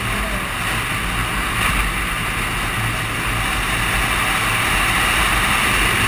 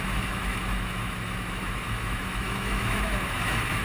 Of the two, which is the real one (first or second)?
first